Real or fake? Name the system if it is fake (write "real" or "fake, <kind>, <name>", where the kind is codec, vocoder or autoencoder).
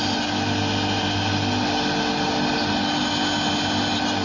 real